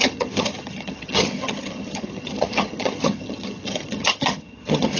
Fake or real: fake